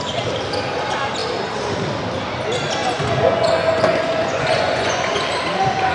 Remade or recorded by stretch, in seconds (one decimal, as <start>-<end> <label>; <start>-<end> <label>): 0.0-2.8 recorded; 2.8-5.3 remade; 5.3-5.9 recorded